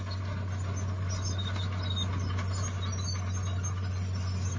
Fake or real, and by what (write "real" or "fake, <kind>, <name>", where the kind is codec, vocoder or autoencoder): real